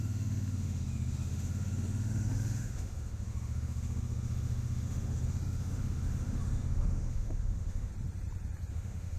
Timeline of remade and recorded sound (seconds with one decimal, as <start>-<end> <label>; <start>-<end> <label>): 0.0-7.9 remade; 7.9-8.7 recorded; 8.7-9.2 remade